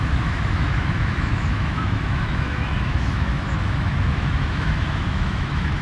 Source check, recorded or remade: remade